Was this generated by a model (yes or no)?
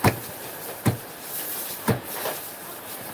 yes